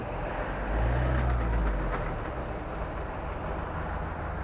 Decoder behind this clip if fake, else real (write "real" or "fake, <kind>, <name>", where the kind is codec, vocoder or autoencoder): real